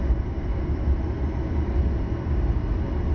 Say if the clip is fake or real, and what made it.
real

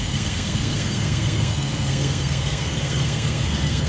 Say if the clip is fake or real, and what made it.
fake, codec, SNAC